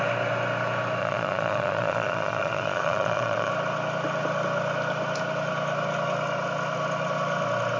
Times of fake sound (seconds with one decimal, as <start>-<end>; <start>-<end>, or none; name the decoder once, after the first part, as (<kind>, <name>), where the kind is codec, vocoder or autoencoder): 1.0-3.5 (vocoder, Vocos)